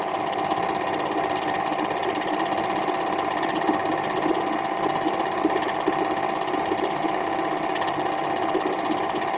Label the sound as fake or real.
real